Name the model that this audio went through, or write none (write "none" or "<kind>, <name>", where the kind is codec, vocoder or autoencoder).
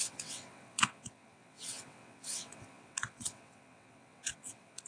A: vocoder, WaveNeXt